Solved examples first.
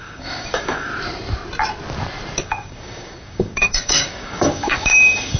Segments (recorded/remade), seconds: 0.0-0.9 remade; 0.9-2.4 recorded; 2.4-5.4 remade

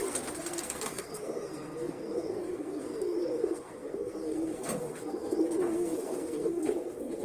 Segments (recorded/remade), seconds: 0.0-7.2 remade

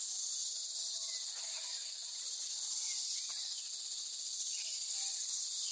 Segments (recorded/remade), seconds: 0.0-5.7 recorded

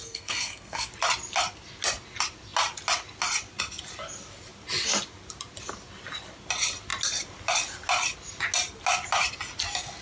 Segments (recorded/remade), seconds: 0.0-0.9 remade; 0.9-10.0 recorded

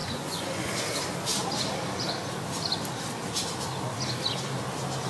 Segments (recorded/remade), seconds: 0.0-0.7 remade; 0.7-5.1 recorded